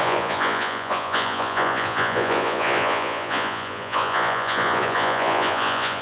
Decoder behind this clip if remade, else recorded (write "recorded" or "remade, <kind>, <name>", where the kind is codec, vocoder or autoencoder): remade, vocoder, Vocos